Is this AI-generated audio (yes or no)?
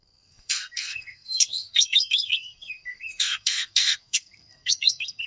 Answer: yes